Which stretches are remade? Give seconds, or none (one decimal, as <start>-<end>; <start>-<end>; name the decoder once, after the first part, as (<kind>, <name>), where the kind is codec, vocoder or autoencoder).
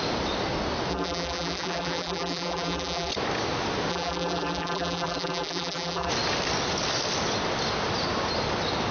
0.9-3.1 (vocoder, BigVGAN v2); 3.9-6.1